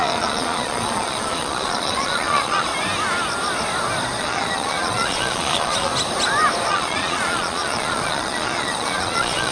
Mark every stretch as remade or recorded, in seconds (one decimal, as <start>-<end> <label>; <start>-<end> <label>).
0.0-2.7 remade; 2.7-4.2 recorded; 4.2-5.9 remade; 5.9-6.7 recorded; 6.7-9.5 remade